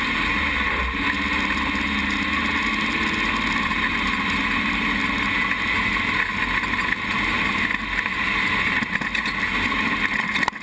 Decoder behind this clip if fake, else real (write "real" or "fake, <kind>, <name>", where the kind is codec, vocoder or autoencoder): real